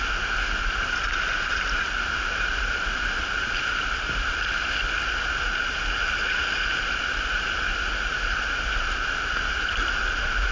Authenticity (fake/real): real